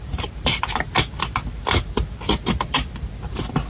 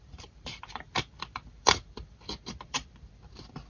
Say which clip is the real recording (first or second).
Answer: first